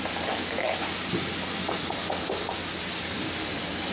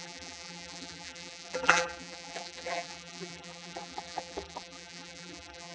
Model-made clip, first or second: second